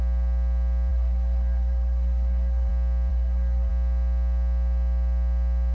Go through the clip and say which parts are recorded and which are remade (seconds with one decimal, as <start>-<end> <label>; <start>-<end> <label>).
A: 0.0-0.9 recorded; 0.9-2.7 remade; 2.7-3.1 recorded; 3.1-3.7 remade; 3.7-5.7 recorded